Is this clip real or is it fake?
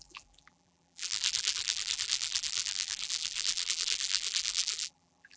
fake